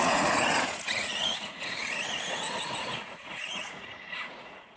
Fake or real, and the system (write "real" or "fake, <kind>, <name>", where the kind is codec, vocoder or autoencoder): fake, vocoder, Vocos